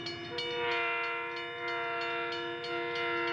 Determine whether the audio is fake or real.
real